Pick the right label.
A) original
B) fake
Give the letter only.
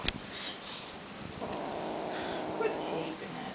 A